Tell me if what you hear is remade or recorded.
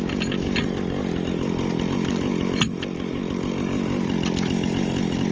recorded